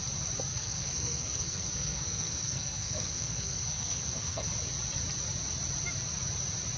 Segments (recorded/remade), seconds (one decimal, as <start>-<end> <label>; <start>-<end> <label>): 0.0-0.5 recorded; 0.5-4.5 remade; 4.5-6.8 recorded